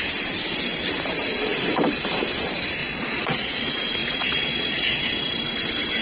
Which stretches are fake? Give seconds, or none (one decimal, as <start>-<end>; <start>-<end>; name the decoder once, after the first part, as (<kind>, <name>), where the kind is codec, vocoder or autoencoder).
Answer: 2.8-3.6 (vocoder, Vocos); 4.0-5.0